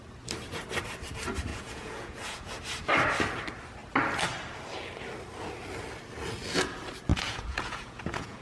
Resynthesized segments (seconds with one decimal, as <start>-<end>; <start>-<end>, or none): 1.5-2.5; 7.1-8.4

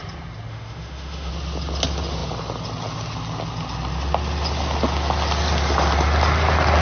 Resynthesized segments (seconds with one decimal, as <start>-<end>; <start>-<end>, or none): 0.5-1.3

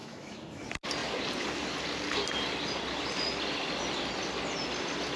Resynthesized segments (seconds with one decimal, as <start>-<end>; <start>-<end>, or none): 0.0-0.6